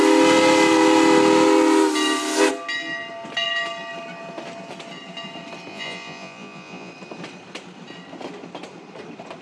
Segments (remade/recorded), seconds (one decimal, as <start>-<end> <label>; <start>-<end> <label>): 0.0-5.7 recorded; 5.7-6.9 remade; 6.9-9.4 recorded